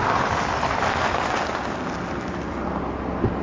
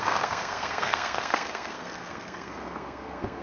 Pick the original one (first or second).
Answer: first